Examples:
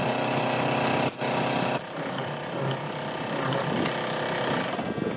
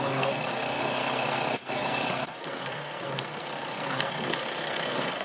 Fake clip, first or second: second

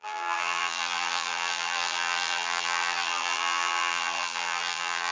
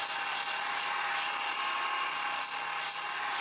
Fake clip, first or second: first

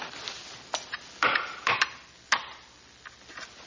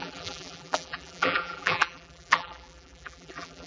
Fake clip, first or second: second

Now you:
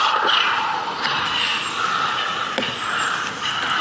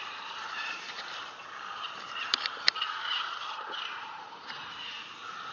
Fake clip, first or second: second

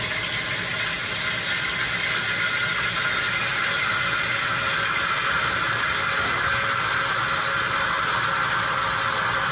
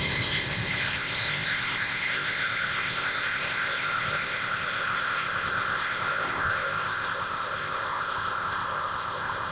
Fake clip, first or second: second